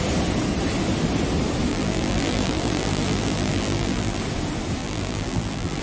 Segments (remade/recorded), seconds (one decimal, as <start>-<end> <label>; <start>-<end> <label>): 0.0-1.7 recorded; 1.7-4.2 remade; 4.2-4.8 recorded; 4.8-5.8 remade